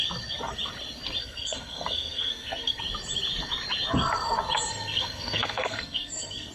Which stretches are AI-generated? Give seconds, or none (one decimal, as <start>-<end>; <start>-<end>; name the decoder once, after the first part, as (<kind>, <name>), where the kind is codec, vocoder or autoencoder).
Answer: 1.2-2.8 (codec, SNAC); 4.7-6.5